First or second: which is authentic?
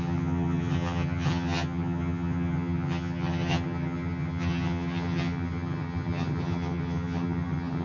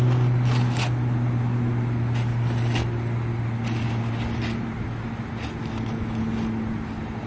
second